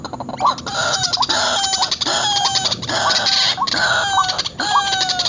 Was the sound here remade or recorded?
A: recorded